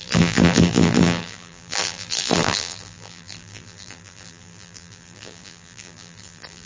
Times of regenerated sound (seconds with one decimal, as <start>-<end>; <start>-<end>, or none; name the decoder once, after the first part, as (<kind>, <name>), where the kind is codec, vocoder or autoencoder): 0.0-6.7 (vocoder, BigVGAN v2)